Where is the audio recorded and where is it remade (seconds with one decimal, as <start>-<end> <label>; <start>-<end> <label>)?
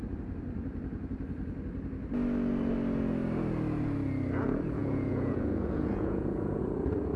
0.0-4.8 recorded; 4.8-6.6 remade; 6.6-7.2 recorded